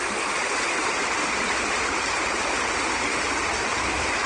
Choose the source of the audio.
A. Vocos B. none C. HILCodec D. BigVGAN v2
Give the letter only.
B